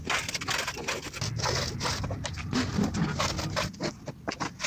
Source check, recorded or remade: recorded